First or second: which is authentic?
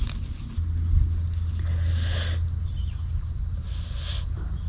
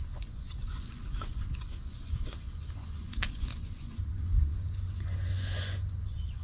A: first